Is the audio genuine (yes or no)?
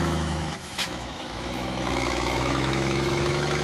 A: no